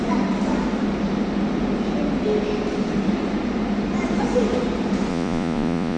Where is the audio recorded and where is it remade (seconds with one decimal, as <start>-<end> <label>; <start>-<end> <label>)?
0.0-5.1 recorded; 5.1-6.0 remade